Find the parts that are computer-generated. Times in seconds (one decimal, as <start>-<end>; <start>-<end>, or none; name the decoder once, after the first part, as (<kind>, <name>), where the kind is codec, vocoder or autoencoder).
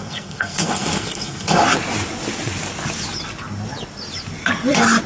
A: 0.0-1.6 (codec, SNAC)